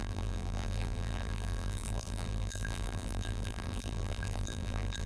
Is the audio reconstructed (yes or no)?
yes